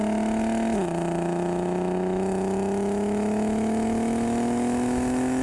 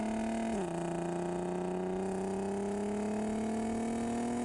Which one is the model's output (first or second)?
first